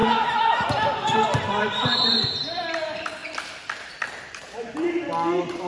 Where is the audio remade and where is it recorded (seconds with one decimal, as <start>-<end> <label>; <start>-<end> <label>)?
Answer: 0.0-1.5 recorded; 1.5-3.2 remade; 3.2-4.2 recorded; 4.2-5.7 remade